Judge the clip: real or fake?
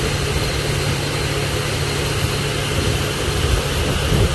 real